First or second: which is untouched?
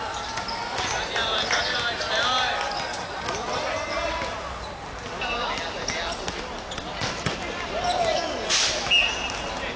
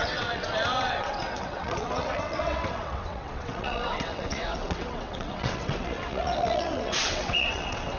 first